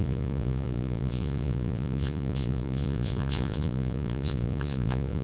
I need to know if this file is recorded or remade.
remade